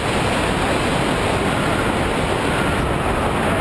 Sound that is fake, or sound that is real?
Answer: real